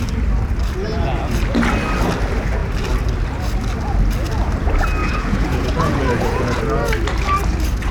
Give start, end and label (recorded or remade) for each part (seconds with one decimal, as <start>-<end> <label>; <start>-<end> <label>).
0.0-5.0 recorded; 5.0-6.6 remade; 6.6-7.9 recorded